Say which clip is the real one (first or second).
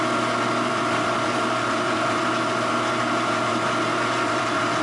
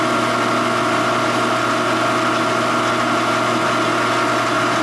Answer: second